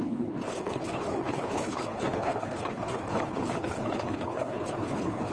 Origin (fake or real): fake